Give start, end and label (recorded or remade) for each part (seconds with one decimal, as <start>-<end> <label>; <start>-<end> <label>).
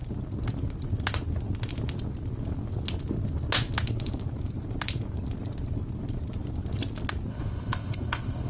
0.0-7.3 recorded; 7.3-8.5 remade